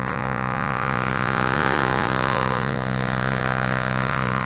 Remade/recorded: remade